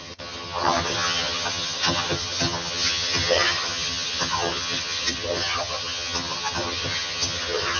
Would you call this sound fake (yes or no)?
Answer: yes